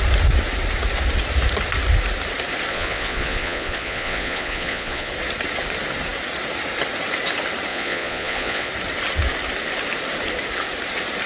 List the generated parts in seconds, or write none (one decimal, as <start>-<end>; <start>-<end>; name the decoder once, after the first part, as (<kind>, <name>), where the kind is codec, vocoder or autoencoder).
2.7-5.1 (vocoder, Vocos); 7.7-8.7